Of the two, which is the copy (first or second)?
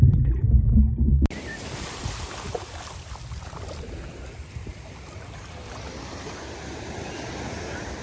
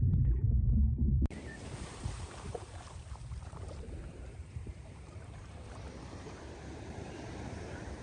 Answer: second